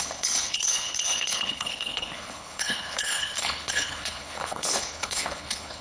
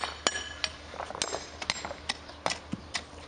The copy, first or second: first